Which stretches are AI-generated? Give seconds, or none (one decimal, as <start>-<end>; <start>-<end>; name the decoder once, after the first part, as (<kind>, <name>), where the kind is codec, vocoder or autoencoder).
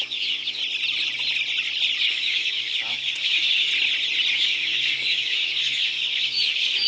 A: 0.0-0.6 (codec, DAC); 2.0-3.7; 4.3-6.9